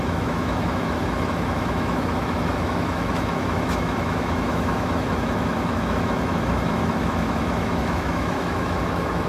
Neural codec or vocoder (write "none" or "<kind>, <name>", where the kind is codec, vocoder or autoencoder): autoencoder, DAC-VAE